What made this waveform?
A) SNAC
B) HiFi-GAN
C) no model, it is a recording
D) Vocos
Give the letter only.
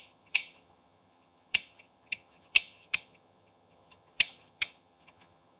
B